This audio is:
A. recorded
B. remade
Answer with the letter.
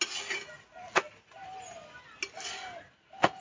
A